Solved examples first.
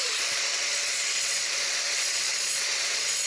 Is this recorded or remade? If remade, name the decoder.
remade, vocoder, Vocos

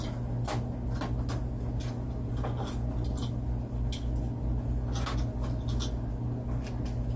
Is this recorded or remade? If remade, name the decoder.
recorded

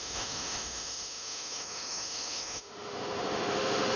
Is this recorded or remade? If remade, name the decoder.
remade, autoencoder, DAC-VAE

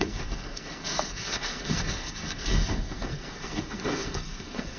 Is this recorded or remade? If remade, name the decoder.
remade, codec, SNAC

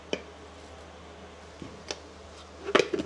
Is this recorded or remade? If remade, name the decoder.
recorded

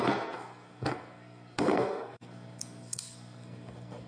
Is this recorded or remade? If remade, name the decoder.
remade, codec, SNAC